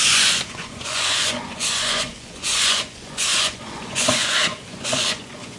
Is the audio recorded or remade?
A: remade